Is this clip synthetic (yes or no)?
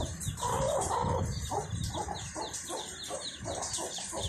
yes